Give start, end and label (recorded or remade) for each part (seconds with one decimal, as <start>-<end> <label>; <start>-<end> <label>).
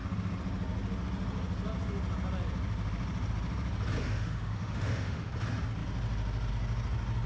0.0-4.0 recorded; 4.0-5.3 remade; 5.3-7.3 recorded